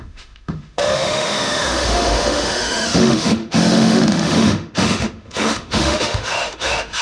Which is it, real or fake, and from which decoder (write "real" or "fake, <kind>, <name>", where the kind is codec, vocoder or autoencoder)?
fake, autoencoder, DAC-VAE